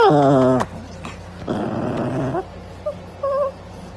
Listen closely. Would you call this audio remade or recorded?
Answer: recorded